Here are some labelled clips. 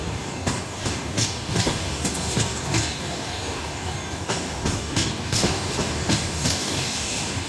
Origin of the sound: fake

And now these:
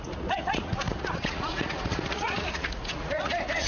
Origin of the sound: fake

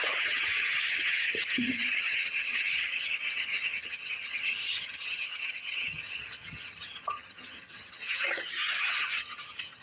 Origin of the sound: fake